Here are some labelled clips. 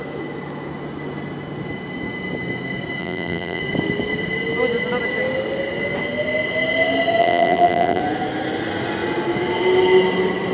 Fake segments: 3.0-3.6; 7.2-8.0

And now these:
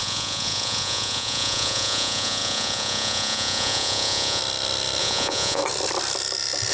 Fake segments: 0.0-4.4; 5.0-5.6

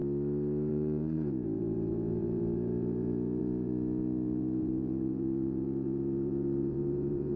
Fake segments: 0.7-7.4

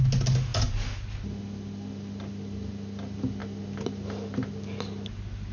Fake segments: none

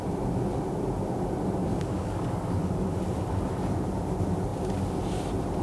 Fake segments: 1.7-2.6